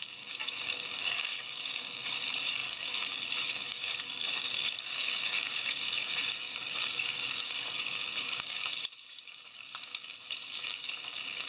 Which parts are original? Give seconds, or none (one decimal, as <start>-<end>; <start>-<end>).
none